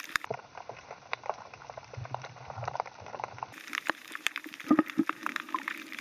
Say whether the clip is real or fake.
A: fake